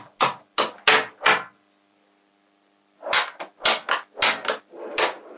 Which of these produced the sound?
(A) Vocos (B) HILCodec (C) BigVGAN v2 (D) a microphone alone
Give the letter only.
D